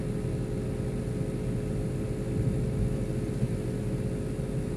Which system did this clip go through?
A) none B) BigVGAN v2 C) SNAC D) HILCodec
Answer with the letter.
A